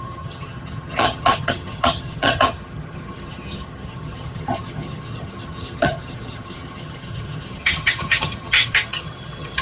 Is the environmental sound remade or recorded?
remade